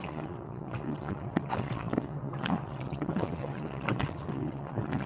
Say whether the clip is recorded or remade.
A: remade